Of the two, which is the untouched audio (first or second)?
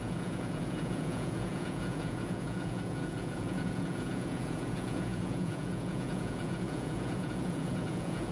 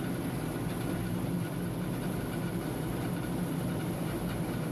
second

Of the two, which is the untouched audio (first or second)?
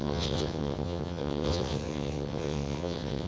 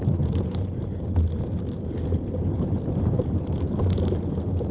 second